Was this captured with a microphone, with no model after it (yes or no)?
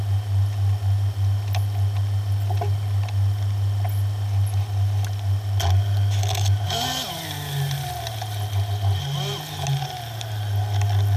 yes